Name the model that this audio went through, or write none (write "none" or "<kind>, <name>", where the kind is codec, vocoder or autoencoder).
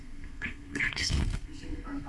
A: codec, SNAC